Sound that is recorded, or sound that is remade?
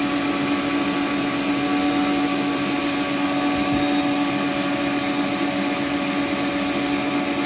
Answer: recorded